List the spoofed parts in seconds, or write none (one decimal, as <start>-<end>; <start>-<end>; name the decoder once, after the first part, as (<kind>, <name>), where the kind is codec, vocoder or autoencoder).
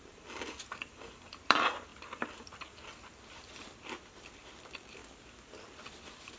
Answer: 0.0-1.9 (vocoder, BigVGAN v2); 3.2-5.0; 5.9-6.4